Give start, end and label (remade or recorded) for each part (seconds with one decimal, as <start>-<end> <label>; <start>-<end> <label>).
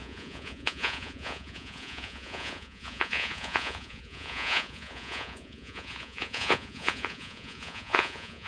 0.0-8.5 remade